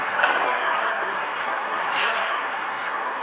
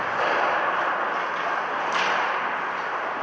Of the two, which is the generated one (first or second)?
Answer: first